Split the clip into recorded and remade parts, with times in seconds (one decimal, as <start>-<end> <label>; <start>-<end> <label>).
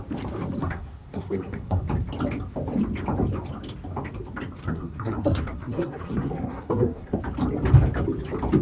0.0-0.6 recorded; 0.6-1.8 remade; 1.8-4.6 recorded; 4.6-7.2 remade; 7.2-8.6 recorded